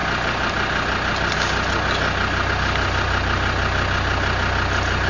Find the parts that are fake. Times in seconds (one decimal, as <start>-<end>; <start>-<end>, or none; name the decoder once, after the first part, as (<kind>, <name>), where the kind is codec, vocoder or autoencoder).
none